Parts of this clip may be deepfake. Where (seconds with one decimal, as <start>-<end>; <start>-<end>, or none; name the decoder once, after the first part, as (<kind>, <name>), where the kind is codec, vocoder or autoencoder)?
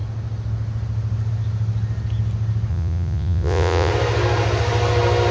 2.7-3.9 (vocoder, Vocos)